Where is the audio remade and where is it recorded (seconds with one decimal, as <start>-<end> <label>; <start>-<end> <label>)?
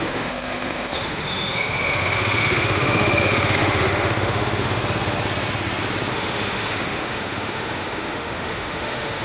0.0-4.8 remade; 4.8-6.1 recorded; 6.1-9.2 remade